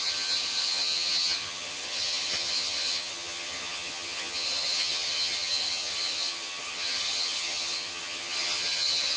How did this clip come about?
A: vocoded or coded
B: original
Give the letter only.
A